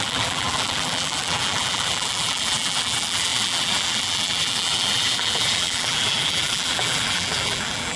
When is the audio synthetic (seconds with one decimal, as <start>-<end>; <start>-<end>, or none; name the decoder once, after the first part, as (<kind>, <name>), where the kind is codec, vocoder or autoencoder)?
0.0-8.0 (vocoder, BigVGAN v2)